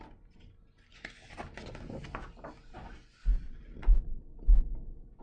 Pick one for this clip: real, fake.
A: real